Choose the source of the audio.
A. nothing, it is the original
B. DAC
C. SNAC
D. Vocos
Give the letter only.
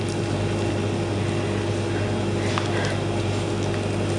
A